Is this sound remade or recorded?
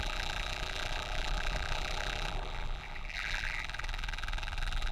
remade